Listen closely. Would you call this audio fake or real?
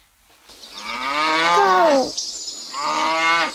real